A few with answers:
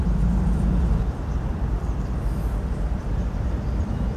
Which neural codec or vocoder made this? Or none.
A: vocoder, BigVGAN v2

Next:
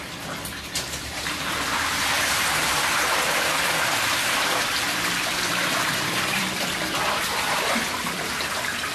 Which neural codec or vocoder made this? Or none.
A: vocoder, BigVGAN v2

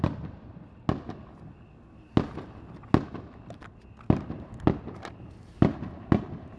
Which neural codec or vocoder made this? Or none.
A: none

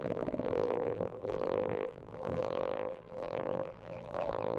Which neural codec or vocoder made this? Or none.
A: vocoder, BigVGAN v2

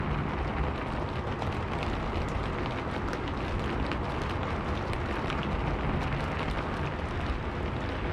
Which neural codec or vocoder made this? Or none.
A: none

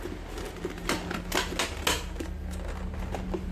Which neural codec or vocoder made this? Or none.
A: none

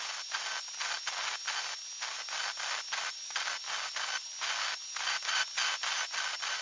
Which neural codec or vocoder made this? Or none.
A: none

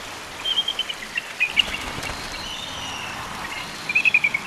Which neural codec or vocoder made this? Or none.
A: vocoder, BigVGAN v2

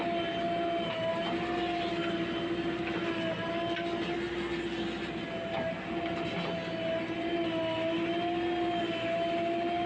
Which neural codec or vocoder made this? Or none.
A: none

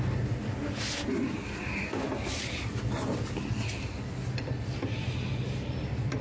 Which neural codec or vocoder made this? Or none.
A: vocoder, BigVGAN v2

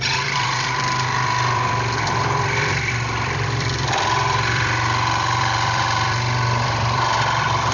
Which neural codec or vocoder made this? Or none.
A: vocoder, BigVGAN v2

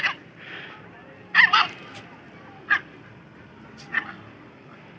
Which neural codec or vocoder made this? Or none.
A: none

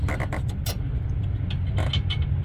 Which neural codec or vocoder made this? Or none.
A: none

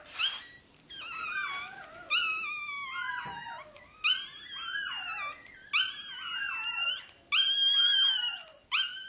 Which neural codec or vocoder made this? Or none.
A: none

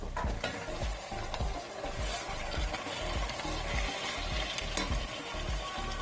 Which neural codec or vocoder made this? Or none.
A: none